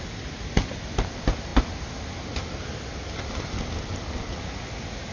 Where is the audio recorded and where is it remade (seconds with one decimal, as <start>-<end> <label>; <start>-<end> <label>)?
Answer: 0.0-5.1 recorded